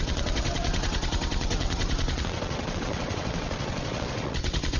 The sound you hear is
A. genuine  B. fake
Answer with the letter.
B